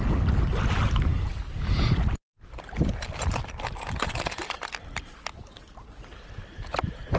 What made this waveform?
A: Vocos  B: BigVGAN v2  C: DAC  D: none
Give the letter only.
D